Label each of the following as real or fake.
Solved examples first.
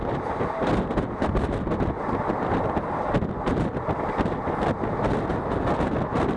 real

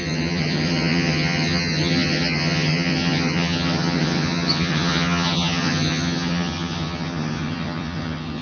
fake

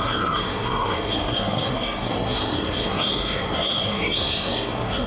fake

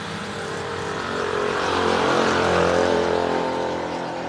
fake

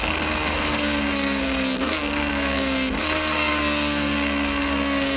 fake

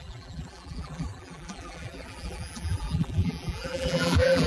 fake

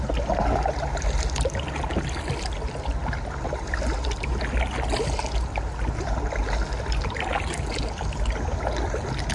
real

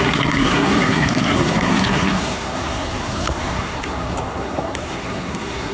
fake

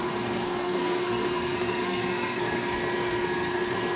fake